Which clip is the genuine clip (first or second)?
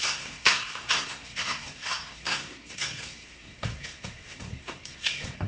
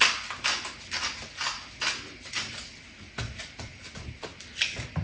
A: second